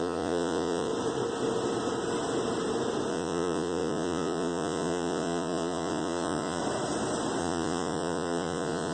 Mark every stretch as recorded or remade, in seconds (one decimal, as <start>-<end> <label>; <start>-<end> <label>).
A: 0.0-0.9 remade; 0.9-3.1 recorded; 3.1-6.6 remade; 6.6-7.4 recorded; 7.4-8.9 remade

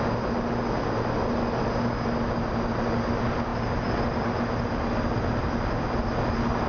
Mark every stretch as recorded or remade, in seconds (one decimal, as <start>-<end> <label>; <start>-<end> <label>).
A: 0.0-6.7 recorded

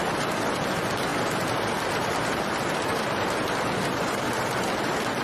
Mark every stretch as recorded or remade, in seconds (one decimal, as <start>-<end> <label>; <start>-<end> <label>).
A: 0.0-1.1 recorded; 1.1-4.2 remade; 4.2-5.2 recorded